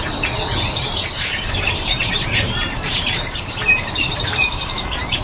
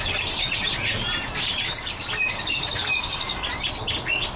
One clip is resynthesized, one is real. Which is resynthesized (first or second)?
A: first